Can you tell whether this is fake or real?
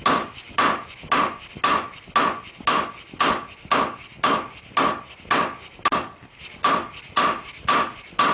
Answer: real